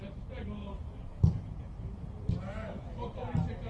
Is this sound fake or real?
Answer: fake